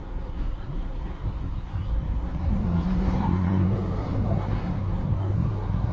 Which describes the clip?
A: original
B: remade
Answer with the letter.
B